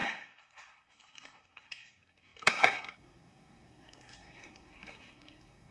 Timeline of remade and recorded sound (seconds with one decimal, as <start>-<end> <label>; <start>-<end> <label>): 0.0-5.7 remade